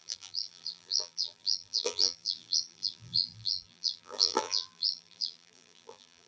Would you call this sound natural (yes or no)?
no